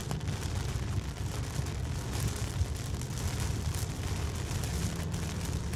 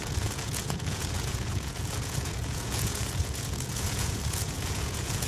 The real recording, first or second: first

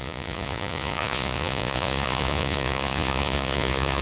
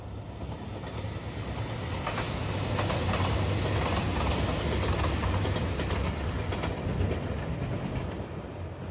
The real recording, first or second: second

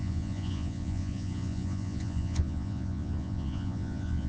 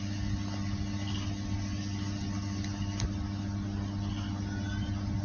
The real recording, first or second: second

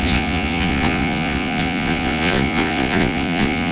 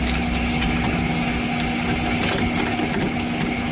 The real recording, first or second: second